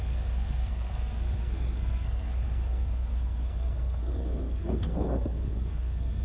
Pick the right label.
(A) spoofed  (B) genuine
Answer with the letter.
A